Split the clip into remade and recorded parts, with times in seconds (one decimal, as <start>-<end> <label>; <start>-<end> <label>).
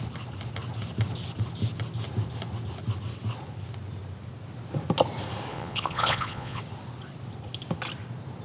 0.0-5.5 recorded; 5.5-6.6 remade; 6.6-8.4 recorded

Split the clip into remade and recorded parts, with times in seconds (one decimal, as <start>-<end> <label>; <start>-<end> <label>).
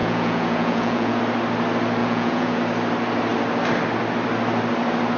0.0-1.2 remade; 1.2-2.0 recorded; 2.0-2.6 remade; 2.6-5.2 recorded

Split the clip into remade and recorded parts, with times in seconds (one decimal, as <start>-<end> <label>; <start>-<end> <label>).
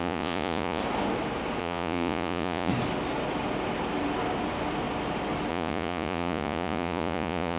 0.0-0.8 remade; 0.8-1.6 recorded; 1.6-2.7 remade; 2.7-5.5 recorded; 5.5-7.6 remade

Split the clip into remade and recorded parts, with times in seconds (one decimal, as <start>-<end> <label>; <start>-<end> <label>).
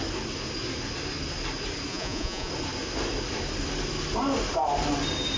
0.0-1.9 recorded; 1.9-2.5 remade; 2.5-5.4 recorded